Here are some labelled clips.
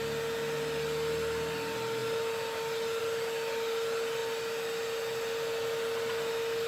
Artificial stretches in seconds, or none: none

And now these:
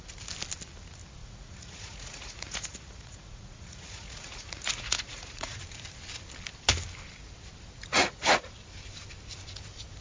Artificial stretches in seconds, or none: 1.2-5.6 (vocoder, Vocos); 7.9-8.5

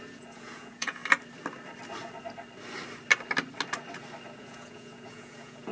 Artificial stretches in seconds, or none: 0.0-1.0 (vocoder, Vocos); 4.4-5.7

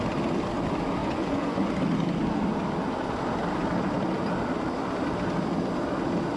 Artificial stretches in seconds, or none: 1.0-1.7 (vocoder, Vocos)

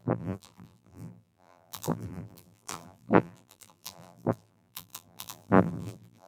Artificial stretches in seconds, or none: 0.0-6.3 (vocoder, BigVGAN v2)

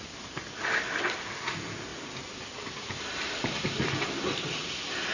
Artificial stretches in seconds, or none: none

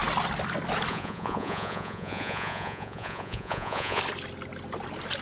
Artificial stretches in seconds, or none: 0.9-4.0 (vocoder, Vocos)

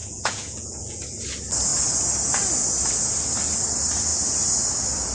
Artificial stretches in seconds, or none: 0.0-1.0 (vocoder, Vocos)